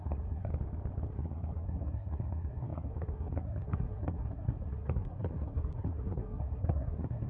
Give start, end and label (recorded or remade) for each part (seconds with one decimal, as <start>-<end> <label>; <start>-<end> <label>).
0.0-0.5 remade; 0.5-1.1 recorded; 1.1-7.3 remade